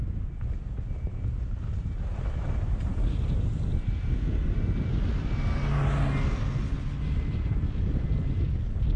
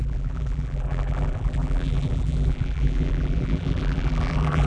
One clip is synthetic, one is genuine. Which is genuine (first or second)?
first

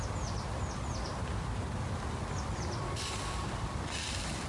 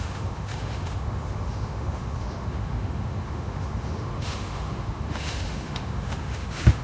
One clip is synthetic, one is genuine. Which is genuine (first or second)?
first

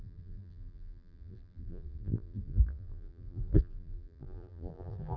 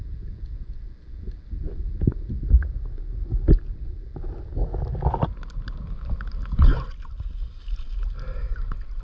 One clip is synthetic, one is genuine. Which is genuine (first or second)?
second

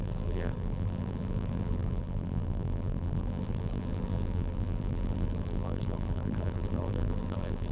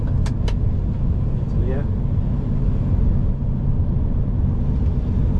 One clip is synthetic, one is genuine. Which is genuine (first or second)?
second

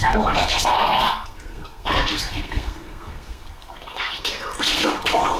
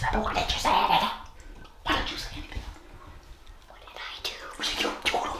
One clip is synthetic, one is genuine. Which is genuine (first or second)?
second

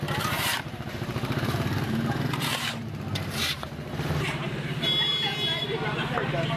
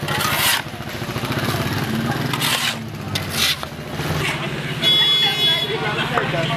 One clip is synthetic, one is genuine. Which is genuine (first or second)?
second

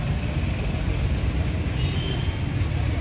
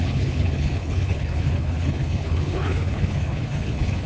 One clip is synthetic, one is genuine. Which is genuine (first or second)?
first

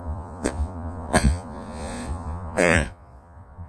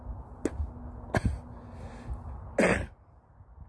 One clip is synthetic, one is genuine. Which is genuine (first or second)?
second